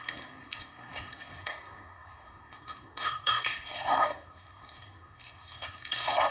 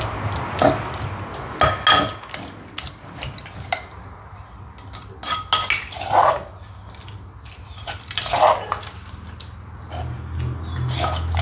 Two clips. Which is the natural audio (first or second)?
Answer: second